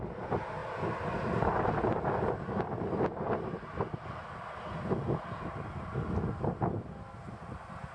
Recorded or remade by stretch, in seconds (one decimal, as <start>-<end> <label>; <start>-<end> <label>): 0.0-7.9 recorded